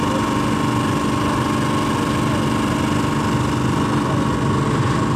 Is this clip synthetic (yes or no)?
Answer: no